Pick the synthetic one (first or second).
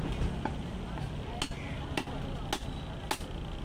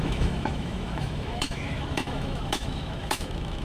second